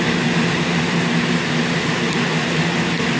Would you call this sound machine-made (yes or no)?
no